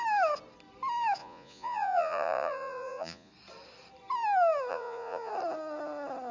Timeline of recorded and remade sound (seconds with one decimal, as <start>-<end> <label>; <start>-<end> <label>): 0.0-1.2 recorded; 1.2-3.3 remade; 3.3-4.7 recorded; 4.7-5.3 remade; 5.3-6.3 recorded